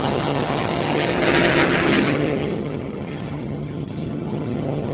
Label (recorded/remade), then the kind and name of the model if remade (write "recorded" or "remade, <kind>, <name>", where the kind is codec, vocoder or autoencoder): remade, vocoder, HiFi-GAN